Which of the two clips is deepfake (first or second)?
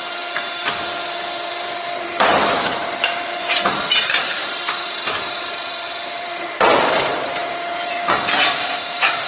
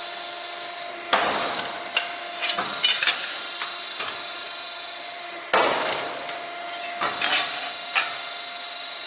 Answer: first